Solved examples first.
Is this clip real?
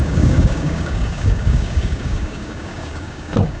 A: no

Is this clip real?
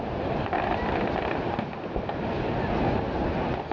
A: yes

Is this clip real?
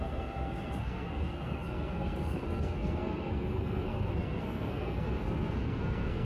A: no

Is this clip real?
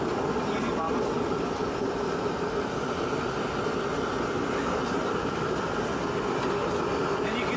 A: yes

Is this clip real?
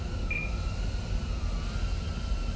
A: yes